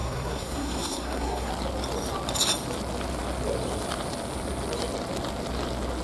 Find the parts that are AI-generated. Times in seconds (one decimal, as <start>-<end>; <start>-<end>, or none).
0.0-1.5